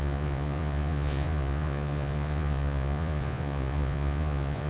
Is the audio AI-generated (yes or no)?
yes